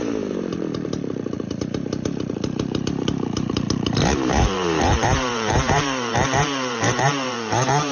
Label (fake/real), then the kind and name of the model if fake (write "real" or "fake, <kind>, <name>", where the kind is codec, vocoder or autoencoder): fake, vocoder, BigVGAN v2